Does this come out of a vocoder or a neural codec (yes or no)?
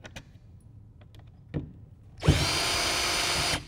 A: no